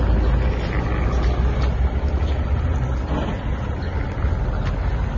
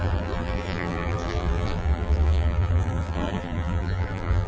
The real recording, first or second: first